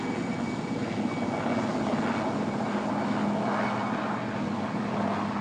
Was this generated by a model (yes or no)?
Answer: no